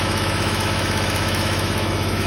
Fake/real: fake